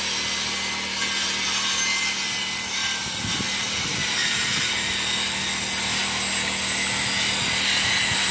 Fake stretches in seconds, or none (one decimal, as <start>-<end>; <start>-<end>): none